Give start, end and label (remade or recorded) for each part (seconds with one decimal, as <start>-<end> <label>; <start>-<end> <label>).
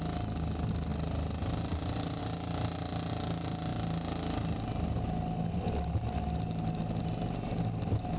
0.0-8.2 recorded